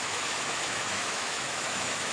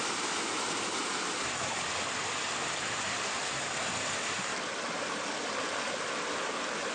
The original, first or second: second